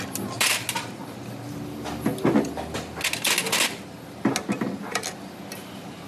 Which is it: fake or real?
real